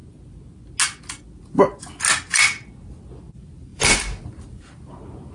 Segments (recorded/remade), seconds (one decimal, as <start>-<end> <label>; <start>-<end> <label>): 0.0-3.2 recorded; 3.2-5.3 remade